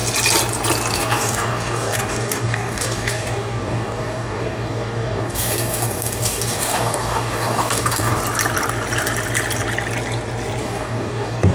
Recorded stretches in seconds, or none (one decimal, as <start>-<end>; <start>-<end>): 0.0-0.9; 8.2-10.6